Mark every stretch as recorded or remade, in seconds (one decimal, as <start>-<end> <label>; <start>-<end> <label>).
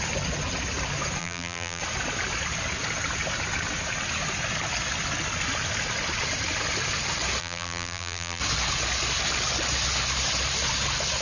0.0-1.2 recorded; 1.2-1.8 remade; 1.8-7.4 recorded; 7.4-8.4 remade; 8.4-11.2 recorded